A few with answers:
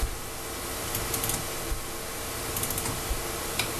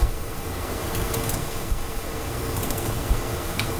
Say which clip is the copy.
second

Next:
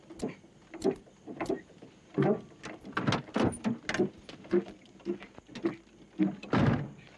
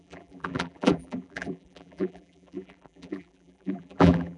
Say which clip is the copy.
second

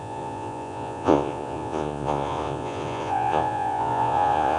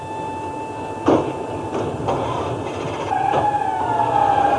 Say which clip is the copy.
first